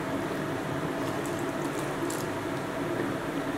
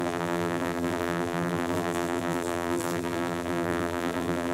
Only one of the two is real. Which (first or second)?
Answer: first